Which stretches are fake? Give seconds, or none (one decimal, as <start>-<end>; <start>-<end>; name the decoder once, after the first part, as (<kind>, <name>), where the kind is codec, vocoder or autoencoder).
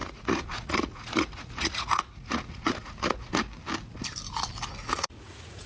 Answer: 0.0-3.4 (vocoder, Vocos); 4.8-5.7